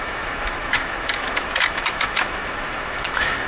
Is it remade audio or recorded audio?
remade